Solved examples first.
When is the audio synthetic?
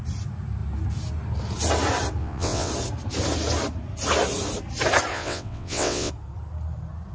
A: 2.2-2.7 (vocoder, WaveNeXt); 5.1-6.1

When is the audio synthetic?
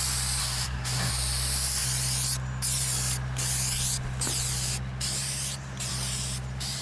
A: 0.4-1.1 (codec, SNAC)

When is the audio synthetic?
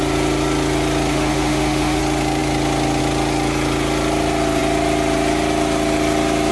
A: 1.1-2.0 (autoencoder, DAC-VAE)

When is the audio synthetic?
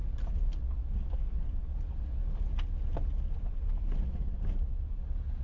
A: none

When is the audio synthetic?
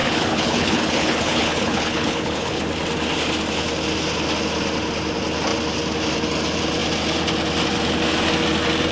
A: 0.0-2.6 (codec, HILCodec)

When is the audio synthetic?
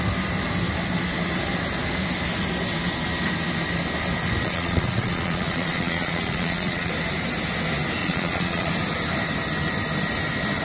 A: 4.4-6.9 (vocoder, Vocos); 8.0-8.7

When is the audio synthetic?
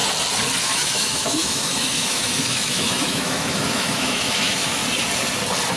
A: 0.6-4.8 (autoencoder, DAC-VAE)